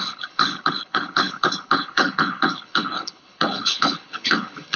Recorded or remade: remade